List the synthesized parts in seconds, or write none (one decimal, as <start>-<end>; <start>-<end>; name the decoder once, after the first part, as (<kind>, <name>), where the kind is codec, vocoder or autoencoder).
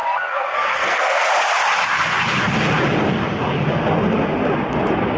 0.0-1.3 (codec, SNAC)